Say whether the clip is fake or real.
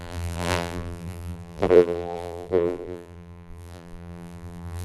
fake